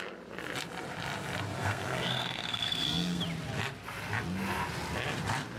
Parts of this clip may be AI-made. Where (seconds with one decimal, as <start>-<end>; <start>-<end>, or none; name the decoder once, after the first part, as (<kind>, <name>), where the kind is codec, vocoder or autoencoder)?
1.6-3.2 (codec, SNAC)